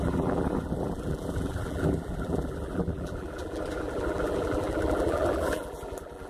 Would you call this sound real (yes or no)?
no